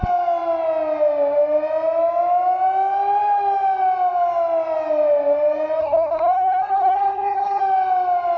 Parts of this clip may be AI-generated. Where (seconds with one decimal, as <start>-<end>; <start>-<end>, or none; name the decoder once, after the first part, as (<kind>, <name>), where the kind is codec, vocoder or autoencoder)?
5.8-7.6 (codec, SNAC)